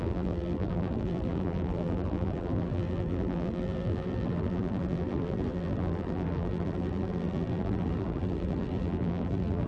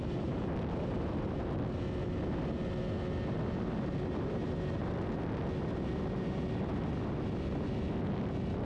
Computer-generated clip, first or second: first